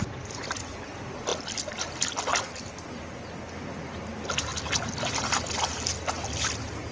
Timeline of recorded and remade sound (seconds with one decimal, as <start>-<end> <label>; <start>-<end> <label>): 0.0-6.9 recorded